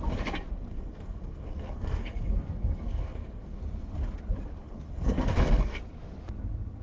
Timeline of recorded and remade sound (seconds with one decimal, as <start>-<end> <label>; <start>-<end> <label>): 0.0-0.7 recorded; 0.7-3.6 remade; 3.6-4.6 recorded; 4.6-5.8 remade; 5.8-6.8 recorded

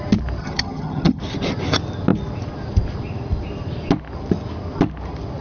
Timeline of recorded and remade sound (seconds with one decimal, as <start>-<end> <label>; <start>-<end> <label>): 0.0-0.4 recorded; 0.4-1.2 remade; 1.2-5.4 recorded

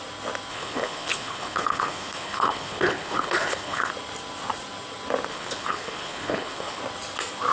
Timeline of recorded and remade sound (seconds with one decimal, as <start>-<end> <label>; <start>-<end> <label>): 0.0-0.5 recorded; 0.5-3.9 remade; 3.9-5.3 recorded; 5.3-6.8 remade; 6.8-7.5 recorded

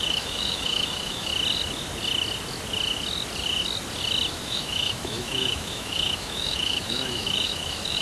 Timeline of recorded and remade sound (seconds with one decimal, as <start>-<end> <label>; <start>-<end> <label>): 0.0-1.3 remade; 1.3-4.3 recorded; 4.3-8.0 remade

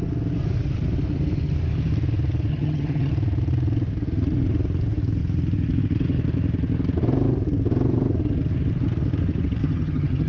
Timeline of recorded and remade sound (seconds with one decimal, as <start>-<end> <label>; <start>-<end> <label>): 0.0-2.5 recorded; 2.5-3.1 remade; 3.1-9.6 recorded; 9.6-10.3 remade

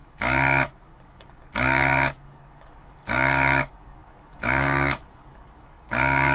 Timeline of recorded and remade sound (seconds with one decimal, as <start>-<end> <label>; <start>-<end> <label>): 0.0-6.3 remade